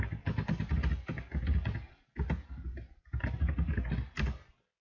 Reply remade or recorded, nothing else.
recorded